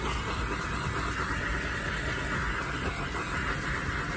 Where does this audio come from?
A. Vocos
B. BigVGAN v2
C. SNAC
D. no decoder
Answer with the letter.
D